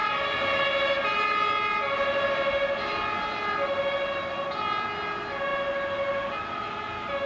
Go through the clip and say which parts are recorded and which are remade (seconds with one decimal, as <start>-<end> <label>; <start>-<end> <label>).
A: 0.0-7.3 recorded